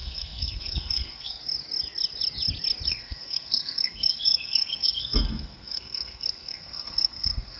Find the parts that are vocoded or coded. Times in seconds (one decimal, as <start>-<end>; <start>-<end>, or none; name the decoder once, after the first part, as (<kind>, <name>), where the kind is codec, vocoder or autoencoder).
0.0-1.4 (codec, SNAC); 2.9-7.6